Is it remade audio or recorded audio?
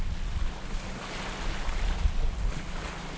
recorded